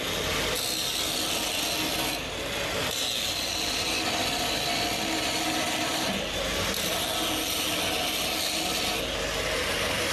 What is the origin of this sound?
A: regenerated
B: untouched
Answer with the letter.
B